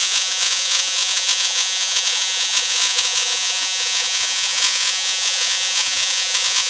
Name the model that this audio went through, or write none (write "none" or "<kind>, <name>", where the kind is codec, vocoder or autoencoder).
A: vocoder, Vocos